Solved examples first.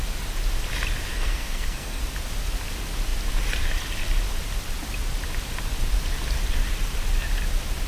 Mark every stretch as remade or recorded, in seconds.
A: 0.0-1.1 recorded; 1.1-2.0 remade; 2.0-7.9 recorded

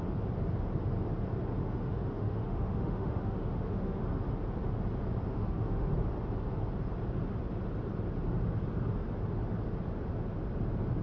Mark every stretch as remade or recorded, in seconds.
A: 0.0-1.6 recorded; 1.6-4.0 remade; 4.0-5.3 recorded; 5.3-5.9 remade; 5.9-11.0 recorded

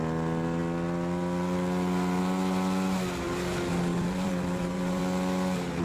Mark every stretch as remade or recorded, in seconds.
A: 0.0-3.9 recorded; 3.9-5.0 remade; 5.0-5.8 recorded

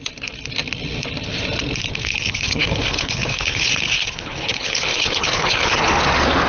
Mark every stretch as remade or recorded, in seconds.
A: 0.0-2.0 recorded; 2.0-5.9 remade; 5.9-6.5 recorded

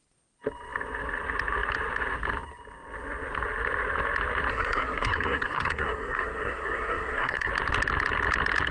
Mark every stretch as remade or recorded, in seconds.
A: 0.0-4.5 recorded; 4.5-7.5 remade; 7.5-8.7 recorded